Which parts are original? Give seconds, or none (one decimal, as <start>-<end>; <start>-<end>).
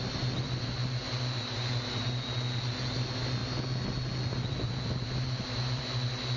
0.0-6.4